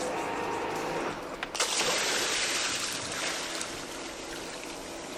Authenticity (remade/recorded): recorded